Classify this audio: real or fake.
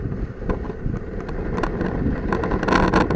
real